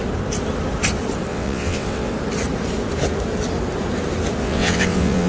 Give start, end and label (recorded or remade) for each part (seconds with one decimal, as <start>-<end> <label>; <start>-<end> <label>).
0.0-1.3 recorded; 1.3-2.1 remade; 2.1-4.4 recorded; 4.4-5.3 remade